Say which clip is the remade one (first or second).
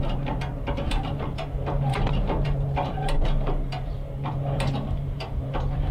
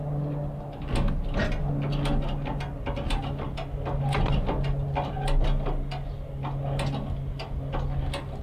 first